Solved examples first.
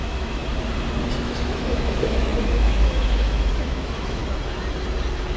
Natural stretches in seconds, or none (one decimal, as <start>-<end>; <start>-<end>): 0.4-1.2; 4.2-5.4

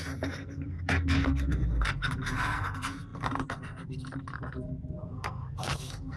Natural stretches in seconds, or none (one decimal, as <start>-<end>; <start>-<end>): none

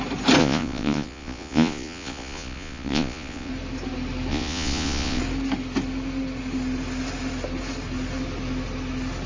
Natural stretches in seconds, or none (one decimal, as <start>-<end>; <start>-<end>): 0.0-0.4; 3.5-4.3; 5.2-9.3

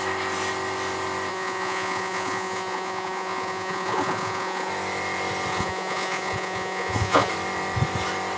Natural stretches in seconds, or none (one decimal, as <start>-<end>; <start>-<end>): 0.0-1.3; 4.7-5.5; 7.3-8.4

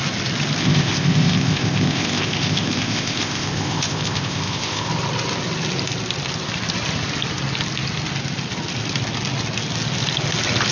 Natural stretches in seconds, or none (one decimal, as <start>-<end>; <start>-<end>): 0.0-0.6; 4.9-10.7